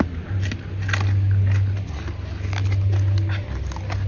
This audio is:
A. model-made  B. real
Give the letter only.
B